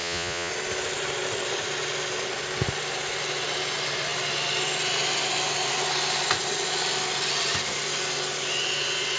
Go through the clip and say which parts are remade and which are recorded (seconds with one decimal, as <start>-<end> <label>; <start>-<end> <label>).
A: 0.0-0.5 remade; 0.5-9.2 recorded